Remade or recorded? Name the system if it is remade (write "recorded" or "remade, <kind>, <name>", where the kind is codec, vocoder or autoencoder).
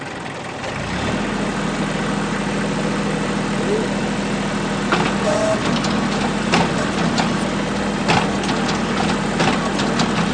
recorded